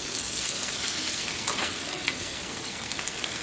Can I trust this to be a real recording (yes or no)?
no